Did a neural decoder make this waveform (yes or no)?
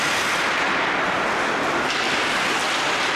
no